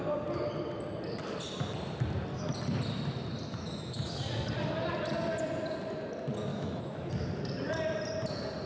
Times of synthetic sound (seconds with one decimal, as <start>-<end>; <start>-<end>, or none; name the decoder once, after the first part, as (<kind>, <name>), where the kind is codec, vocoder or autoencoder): 3.5-4.2 (autoencoder, DAC-VAE); 6.5-7.1